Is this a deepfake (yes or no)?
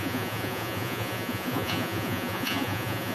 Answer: yes